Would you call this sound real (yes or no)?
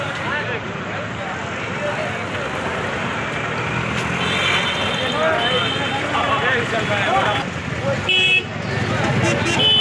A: yes